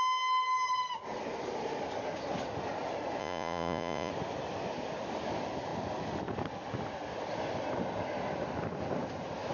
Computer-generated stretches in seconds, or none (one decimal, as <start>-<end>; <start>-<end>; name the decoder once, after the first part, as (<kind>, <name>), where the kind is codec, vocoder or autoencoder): 3.2-4.1 (vocoder, Vocos)